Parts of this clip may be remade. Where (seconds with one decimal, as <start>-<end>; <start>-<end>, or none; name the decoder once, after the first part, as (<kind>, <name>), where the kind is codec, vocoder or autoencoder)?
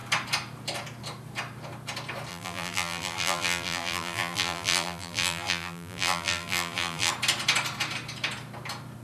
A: 2.3-7.1 (vocoder, BigVGAN v2)